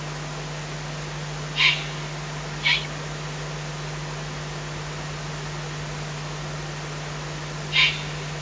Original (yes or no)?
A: yes